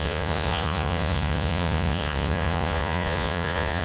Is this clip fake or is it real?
fake